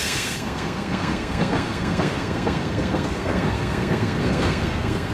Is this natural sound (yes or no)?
no